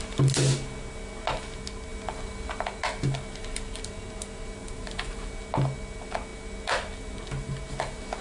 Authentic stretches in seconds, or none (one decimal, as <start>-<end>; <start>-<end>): 0.0-4.6; 5.3-8.2